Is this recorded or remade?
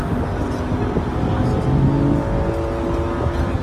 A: recorded